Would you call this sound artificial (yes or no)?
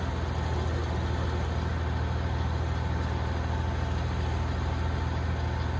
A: no